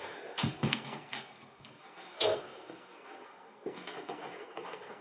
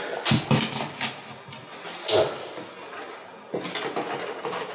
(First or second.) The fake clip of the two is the first